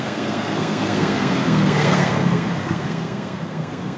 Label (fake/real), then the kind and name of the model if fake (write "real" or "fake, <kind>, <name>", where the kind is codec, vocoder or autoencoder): fake, codec, SNAC